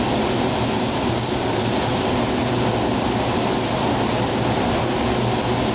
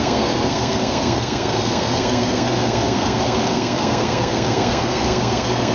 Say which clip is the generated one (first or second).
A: second